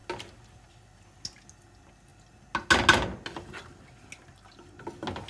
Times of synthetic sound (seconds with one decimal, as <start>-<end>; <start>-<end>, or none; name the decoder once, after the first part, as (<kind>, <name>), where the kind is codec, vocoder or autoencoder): none